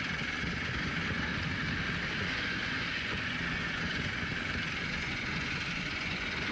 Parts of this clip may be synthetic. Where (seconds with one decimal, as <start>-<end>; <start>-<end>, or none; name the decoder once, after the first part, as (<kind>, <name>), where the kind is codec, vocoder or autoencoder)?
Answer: 0.0-1.3 (vocoder, Vocos); 2.2-4.3; 4.8-6.5